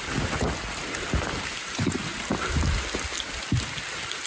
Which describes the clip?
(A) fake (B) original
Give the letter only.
B